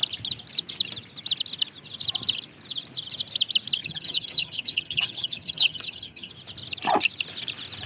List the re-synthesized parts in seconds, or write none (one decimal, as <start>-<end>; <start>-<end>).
3.8-6.3